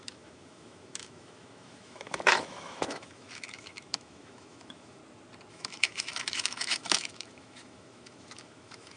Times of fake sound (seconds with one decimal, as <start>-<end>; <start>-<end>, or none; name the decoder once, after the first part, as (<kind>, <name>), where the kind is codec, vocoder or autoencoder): 0.0-5.0 (autoencoder, DAC-VAE); 5.5-9.0